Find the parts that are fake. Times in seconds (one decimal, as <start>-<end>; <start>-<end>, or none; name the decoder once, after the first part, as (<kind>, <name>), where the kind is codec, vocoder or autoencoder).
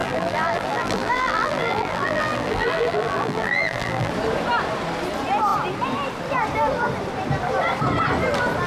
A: 0.0-4.1 (vocoder, BigVGAN v2)